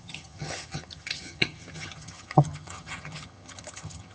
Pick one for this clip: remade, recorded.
remade